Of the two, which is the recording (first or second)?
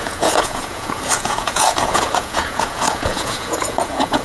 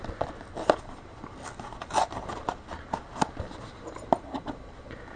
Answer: second